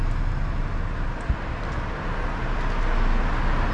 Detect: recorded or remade recorded